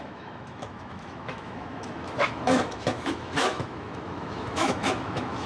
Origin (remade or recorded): remade